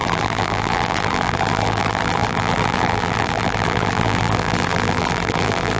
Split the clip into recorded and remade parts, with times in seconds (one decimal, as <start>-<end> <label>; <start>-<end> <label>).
0.0-5.8 remade